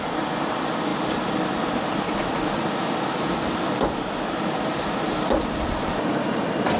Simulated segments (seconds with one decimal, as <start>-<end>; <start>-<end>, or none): none